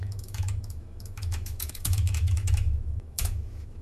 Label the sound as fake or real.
fake